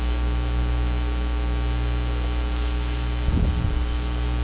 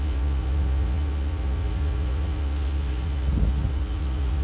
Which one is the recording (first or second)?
first